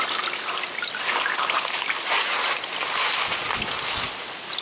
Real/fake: real